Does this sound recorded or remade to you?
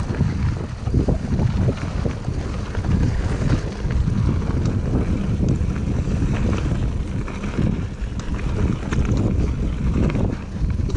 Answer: recorded